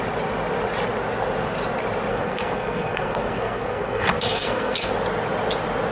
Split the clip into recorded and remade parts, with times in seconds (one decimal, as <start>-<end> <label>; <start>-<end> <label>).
0.0-2.1 recorded; 2.1-4.9 remade; 4.9-5.9 recorded